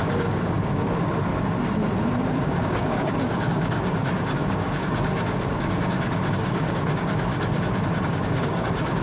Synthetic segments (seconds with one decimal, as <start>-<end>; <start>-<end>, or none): 0.0-1.3; 2.3-7.3; 8.0-9.0